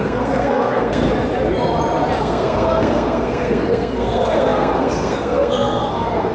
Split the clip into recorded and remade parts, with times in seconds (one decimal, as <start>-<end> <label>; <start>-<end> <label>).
0.0-1.0 remade; 1.0-2.2 recorded; 2.2-6.3 remade